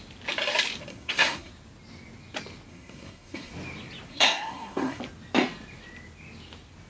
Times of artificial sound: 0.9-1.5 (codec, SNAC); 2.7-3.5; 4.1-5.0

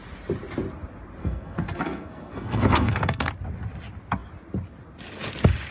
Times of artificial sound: 1.2-3.3 (codec, SNAC)